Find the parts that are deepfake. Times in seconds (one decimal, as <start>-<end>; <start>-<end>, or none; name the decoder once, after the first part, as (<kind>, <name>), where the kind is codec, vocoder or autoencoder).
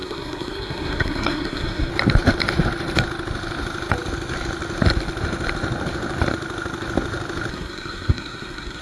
0.0-1.9 (codec, SNAC); 7.5-8.8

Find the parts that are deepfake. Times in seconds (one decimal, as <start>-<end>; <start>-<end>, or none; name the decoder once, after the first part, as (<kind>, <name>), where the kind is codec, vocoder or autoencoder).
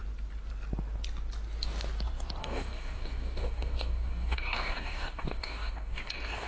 2.4-6.5 (codec, DAC)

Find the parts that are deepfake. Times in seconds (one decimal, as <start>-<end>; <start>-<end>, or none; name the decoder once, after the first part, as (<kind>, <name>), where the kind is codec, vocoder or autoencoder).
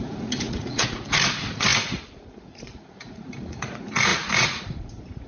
0.0-5.3 (vocoder, Vocos)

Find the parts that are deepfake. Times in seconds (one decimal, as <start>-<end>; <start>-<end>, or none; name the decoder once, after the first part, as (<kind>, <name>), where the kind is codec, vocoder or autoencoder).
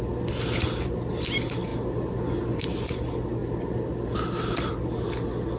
none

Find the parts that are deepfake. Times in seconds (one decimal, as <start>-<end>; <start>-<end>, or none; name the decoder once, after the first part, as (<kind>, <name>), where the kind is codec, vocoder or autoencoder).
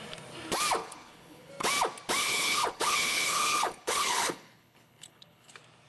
0.8-1.5 (codec, HILCodec); 2.2-5.5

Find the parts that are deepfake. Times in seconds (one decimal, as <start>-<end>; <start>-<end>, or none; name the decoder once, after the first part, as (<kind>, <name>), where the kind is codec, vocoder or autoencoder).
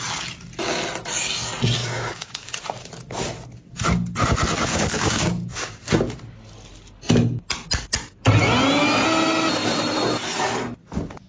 1.8-2.5 (codec, DAC); 4.7-5.9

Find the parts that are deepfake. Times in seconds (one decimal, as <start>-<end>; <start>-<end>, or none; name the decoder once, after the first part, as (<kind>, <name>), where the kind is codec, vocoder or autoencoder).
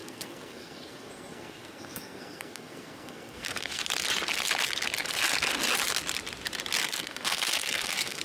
0.0-3.8 (codec, SNAC); 6.8-8.2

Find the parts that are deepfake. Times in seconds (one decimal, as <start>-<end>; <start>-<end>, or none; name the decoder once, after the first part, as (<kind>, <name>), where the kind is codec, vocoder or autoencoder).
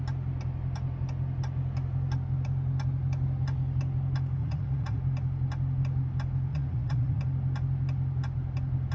4.4-5.0 (vocoder, Vocos); 6.5-7.2